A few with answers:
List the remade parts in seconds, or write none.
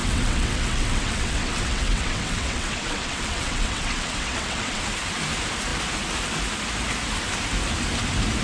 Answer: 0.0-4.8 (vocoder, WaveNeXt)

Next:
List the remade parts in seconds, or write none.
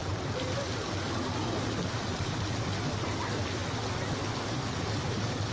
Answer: none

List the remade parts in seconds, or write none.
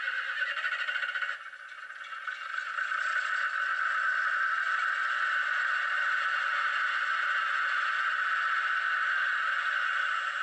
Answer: none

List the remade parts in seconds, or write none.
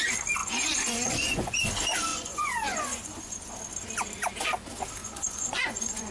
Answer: 0.4-1.7 (vocoder, Vocos); 2.1-3.5; 5.0-6.1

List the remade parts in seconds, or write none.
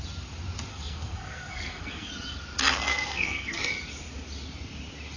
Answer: 0.7-2.1 (codec, SNAC); 2.9-3.6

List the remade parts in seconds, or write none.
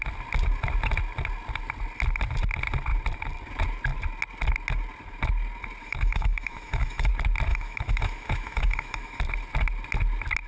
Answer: 5.8-7.1 (autoencoder, DAC-VAE); 7.5-9.2